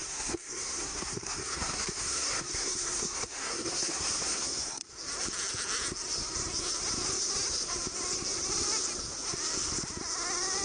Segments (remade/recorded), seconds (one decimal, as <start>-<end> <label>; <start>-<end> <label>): 0.0-4.8 remade; 4.8-10.6 recorded